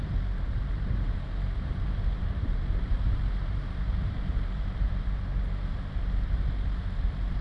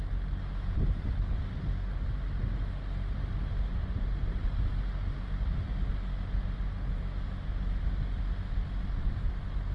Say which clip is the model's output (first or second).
first